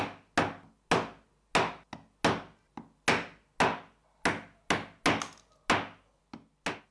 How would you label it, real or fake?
real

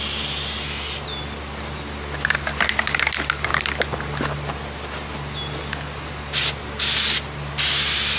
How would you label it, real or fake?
real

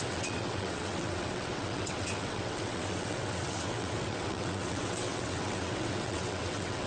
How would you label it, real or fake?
fake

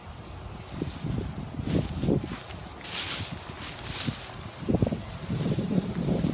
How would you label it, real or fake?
real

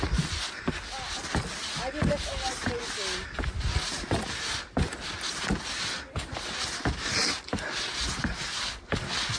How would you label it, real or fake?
real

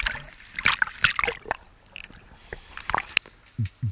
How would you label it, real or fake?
real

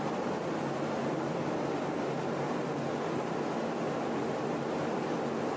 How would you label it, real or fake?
real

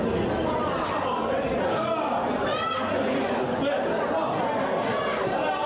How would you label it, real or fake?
real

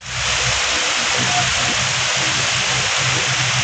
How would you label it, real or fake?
real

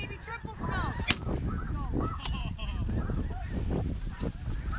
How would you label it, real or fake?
real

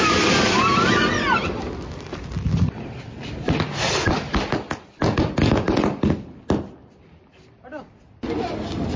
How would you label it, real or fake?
real